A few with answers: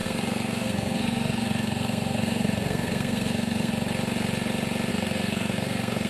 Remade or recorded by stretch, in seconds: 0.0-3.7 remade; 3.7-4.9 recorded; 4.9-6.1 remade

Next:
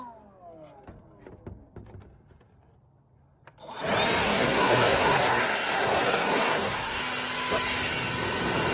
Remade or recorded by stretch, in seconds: 0.0-4.2 recorded; 4.2-7.0 remade; 7.0-8.7 recorded

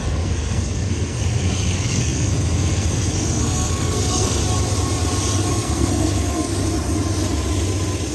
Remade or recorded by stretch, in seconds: 0.0-4.4 remade; 4.4-5.5 recorded; 5.5-6.5 remade; 6.5-8.1 recorded

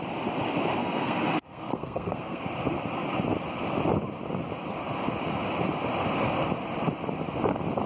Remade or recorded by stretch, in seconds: 0.0-0.8 recorded; 0.8-2.4 remade; 2.4-7.9 recorded